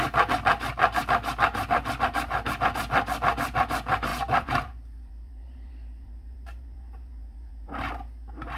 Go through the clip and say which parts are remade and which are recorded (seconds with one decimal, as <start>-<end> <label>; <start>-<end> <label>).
0.0-4.1 recorded; 4.1-7.9 remade; 7.9-8.6 recorded